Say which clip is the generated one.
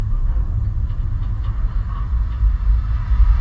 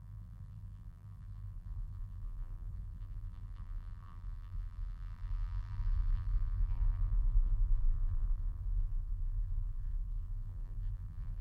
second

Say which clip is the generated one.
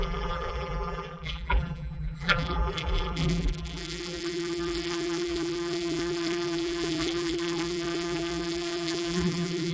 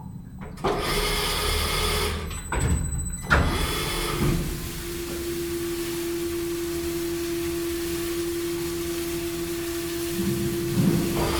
first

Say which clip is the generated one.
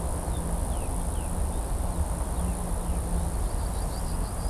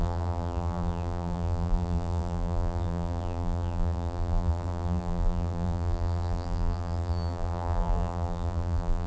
second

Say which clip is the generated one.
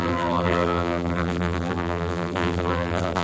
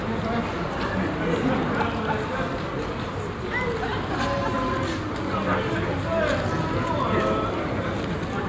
first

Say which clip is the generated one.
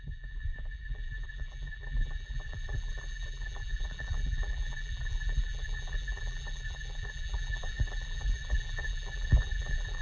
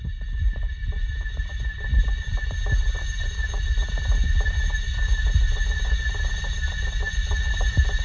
first